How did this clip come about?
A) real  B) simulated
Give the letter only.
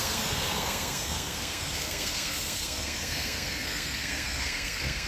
B